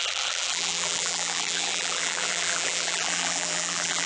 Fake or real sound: fake